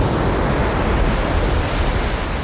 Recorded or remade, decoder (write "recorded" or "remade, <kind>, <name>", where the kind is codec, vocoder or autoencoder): recorded